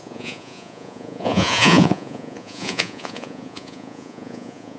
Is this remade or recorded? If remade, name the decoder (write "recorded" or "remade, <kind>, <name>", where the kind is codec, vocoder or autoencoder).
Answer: remade, vocoder, Vocos